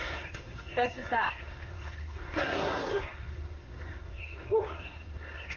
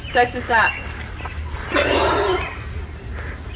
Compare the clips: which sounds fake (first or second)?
first